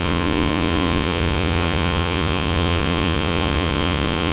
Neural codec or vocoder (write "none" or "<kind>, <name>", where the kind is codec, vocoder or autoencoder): vocoder, Vocos